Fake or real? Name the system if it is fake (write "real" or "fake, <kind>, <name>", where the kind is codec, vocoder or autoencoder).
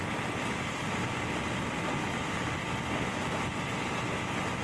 fake, vocoder, BigVGAN v2